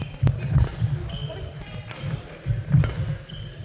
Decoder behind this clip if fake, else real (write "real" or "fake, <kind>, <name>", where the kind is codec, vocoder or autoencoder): real